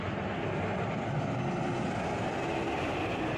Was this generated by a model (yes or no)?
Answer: no